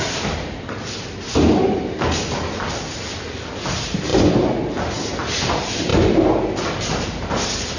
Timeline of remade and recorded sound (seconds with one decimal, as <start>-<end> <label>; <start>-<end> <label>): 0.0-7.8 recorded